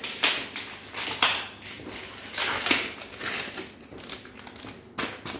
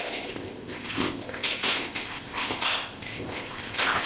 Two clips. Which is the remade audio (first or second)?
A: second